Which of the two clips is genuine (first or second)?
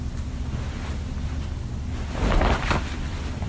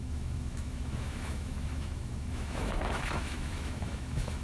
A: first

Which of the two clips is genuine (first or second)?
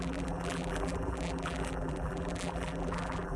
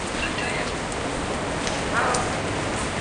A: second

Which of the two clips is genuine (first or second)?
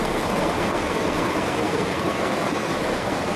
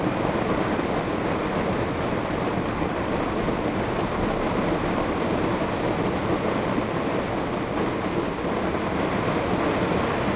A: second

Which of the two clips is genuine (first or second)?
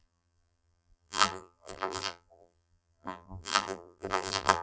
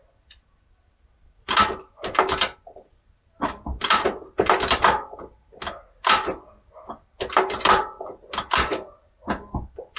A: second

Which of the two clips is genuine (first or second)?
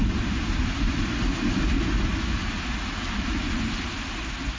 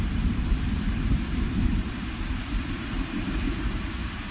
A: first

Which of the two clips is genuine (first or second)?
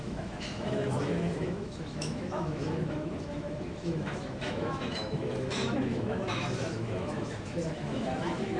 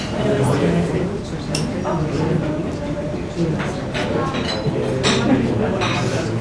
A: second